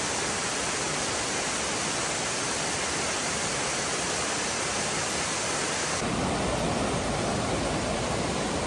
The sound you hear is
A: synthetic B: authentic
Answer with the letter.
B